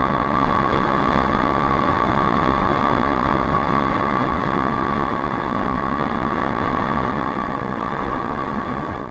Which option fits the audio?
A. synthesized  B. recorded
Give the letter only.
A